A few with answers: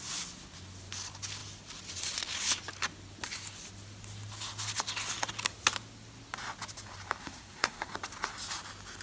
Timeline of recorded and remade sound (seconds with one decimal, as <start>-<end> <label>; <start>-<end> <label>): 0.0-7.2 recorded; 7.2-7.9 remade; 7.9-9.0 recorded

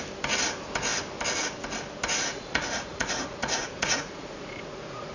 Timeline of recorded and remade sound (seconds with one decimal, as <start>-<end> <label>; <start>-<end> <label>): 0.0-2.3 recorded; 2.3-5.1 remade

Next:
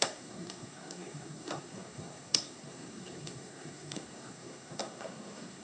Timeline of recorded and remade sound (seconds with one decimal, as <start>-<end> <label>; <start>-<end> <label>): 0.0-5.6 remade